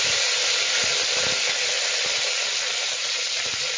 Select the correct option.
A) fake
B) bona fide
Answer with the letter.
B